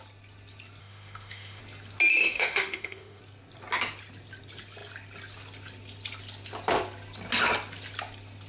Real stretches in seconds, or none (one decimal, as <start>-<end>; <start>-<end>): 0.0-0.8; 1.6-2.2; 3.2-8.5